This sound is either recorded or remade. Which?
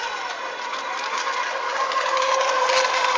recorded